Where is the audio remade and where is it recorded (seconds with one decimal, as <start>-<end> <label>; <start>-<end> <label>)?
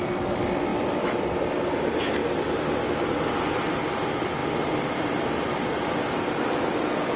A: 0.0-7.2 recorded